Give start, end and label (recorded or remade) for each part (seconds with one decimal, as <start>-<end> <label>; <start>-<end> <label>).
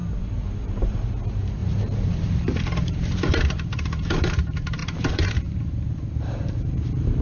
0.0-7.2 remade